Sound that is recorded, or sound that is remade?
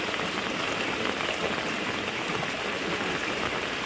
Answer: recorded